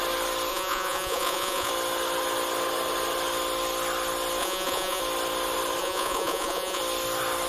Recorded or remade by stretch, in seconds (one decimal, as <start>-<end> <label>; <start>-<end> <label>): 0.0-0.5 recorded; 0.5-1.7 remade; 1.7-4.4 recorded; 4.4-5.0 remade; 5.0-5.8 recorded; 5.8-6.8 remade; 6.8-7.5 recorded